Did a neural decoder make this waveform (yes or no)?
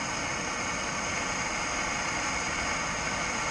no